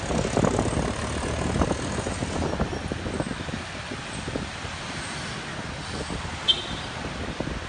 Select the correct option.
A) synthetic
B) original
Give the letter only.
B